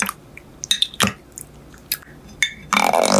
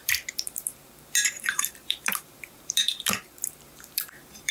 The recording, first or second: first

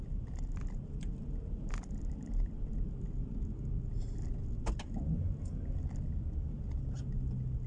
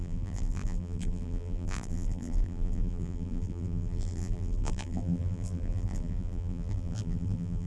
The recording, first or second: first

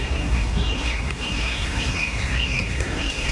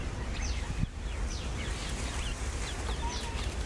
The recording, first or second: second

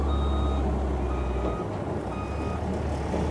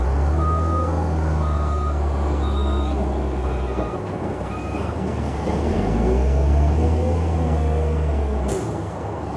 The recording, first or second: first